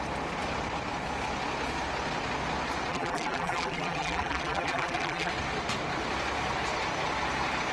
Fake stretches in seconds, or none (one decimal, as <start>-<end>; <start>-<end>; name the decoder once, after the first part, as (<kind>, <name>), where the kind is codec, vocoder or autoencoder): 2.9-5.3 (vocoder, BigVGAN v2)